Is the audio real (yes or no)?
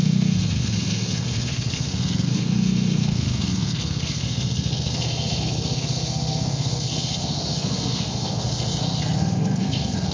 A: no